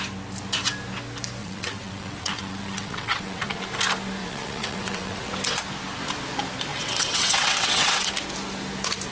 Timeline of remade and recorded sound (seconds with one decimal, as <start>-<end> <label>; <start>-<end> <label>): 0.0-1.4 recorded; 1.4-3.6 remade; 3.6-4.2 recorded; 4.2-5.3 remade; 5.3-6.7 recorded; 6.7-8.1 remade; 8.1-9.1 recorded

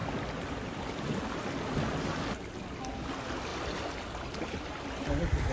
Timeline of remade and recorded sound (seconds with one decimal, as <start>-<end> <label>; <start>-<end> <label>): 0.0-5.5 recorded

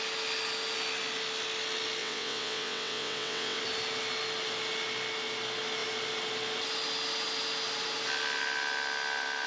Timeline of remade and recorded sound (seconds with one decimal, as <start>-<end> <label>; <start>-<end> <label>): 0.0-2.0 recorded; 2.0-3.6 remade; 3.6-9.5 recorded